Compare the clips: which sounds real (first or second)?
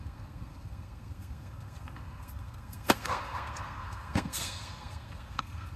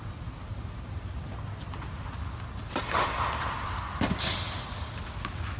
second